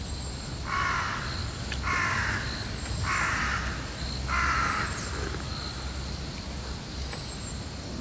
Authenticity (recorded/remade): recorded